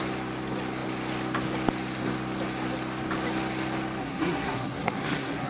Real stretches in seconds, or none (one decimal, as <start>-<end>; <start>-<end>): 0.0-4.0